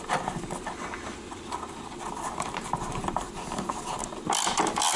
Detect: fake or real fake